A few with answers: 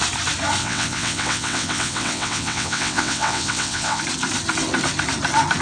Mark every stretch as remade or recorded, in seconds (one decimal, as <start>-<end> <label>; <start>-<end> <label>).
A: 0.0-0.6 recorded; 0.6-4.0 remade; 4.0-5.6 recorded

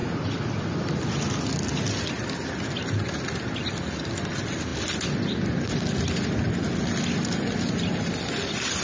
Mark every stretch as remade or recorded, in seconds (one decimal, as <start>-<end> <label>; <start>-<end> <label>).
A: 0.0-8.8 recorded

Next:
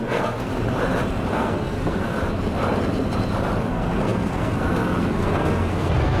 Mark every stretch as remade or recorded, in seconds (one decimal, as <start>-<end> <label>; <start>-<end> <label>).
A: 0.0-0.5 remade; 0.5-1.3 recorded; 1.3-2.2 remade; 2.2-3.6 recorded; 3.6-6.2 remade